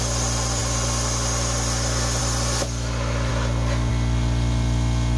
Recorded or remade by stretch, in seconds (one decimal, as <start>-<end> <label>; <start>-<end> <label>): 0.0-5.2 recorded

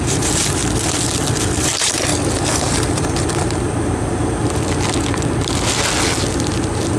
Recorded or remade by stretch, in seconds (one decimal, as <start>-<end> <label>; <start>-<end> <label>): 0.0-0.6 remade; 0.6-1.6 recorded; 1.6-2.1 remade; 2.1-6.3 recorded; 6.3-7.0 remade

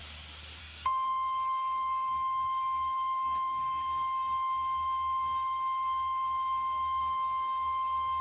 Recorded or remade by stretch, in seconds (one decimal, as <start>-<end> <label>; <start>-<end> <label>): 0.0-0.6 recorded; 0.6-8.2 remade

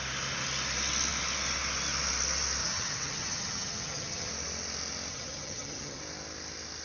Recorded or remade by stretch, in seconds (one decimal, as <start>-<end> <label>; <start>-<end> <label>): 0.0-2.6 recorded; 2.6-4.3 remade; 4.3-5.1 recorded; 5.1-6.0 remade; 6.0-6.8 recorded

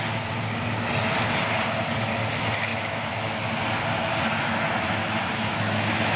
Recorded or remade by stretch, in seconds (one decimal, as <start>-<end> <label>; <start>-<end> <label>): 0.0-2.7 recorded; 2.7-3.5 remade; 3.5-5.0 recorded; 5.0-6.2 remade

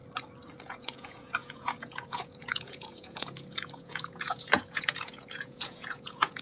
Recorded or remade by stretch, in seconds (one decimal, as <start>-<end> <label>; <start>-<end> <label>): 0.0-0.6 recorded; 0.6-6.4 remade